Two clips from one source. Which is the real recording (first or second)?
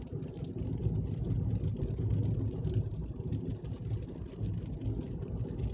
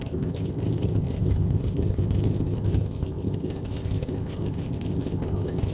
first